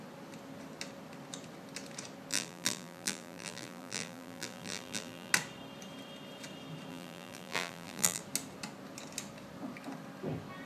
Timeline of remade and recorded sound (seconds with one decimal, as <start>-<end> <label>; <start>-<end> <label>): 0.0-2.3 recorded; 2.3-5.3 remade; 5.3-6.9 recorded; 6.9-8.2 remade; 8.2-10.7 recorded